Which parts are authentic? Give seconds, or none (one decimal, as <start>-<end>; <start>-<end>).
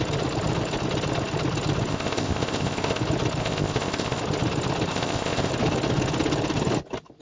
0.0-1.9; 3.0-3.4; 4.2-4.9; 5.5-7.2